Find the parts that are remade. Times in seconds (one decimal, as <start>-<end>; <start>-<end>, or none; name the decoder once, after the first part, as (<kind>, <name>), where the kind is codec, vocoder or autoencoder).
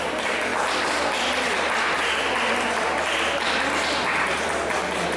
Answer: none